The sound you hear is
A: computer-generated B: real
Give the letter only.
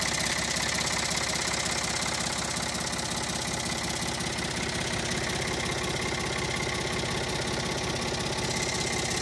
B